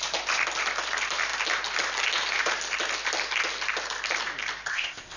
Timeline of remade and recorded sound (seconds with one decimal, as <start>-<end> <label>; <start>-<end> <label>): 0.0-4.7 recorded; 4.7-5.2 remade

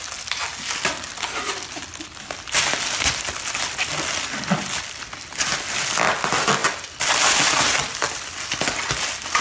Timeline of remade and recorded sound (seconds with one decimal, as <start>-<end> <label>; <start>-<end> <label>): 0.0-9.4 recorded

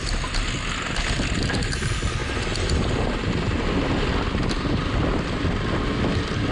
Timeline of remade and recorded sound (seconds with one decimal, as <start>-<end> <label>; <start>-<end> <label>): 0.0-6.5 recorded

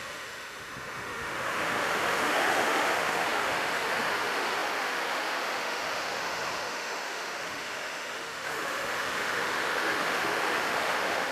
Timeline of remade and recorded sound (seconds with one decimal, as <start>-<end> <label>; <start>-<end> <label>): 0.0-11.3 remade